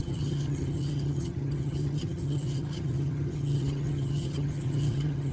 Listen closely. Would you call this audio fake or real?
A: fake